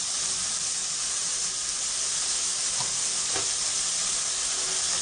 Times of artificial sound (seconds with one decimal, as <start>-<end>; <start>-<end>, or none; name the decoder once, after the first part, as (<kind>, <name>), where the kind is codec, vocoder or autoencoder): none